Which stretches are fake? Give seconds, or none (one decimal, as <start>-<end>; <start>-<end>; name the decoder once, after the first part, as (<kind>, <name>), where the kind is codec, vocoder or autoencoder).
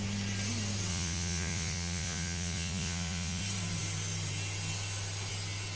0.9-3.4 (vocoder, Vocos)